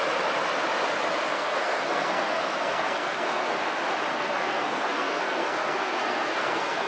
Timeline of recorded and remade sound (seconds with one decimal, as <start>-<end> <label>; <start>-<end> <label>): 0.0-1.3 recorded; 1.3-3.6 remade; 3.6-4.1 recorded; 4.1-6.9 remade